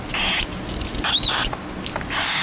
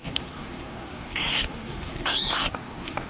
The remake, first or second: second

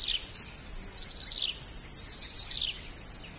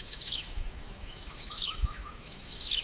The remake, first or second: second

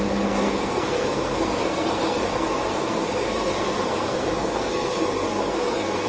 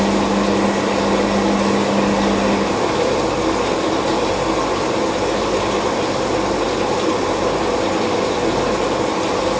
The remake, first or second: first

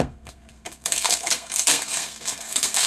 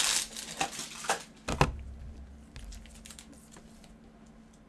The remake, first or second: first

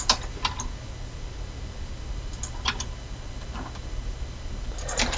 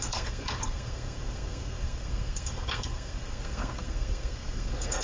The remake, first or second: second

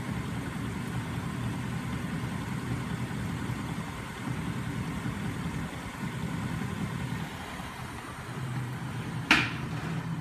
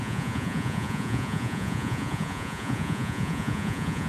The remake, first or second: second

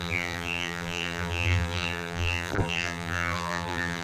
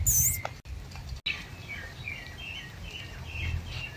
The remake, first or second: first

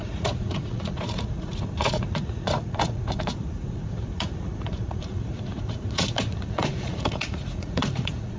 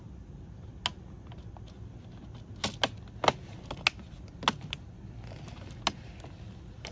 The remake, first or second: first